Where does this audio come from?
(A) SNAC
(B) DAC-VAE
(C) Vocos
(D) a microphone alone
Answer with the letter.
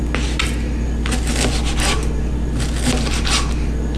D